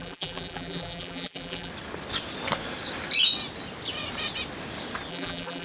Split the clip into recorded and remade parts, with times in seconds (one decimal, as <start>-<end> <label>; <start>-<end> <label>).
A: 0.0-1.7 remade; 1.7-5.1 recorded; 5.1-5.6 remade